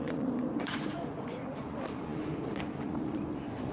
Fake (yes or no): yes